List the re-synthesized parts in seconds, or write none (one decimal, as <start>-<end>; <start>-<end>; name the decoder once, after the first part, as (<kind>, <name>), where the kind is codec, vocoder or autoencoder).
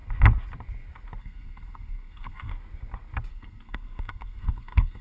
1.2-2.5 (codec, SNAC); 3.3-5.0